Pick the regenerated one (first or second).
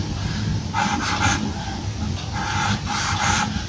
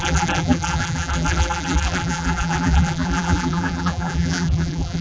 second